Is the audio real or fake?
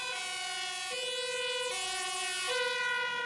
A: real